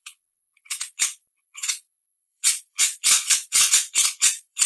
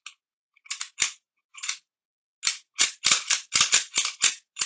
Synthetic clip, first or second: first